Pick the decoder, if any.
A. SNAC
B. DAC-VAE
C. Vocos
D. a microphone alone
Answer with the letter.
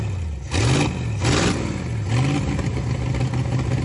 D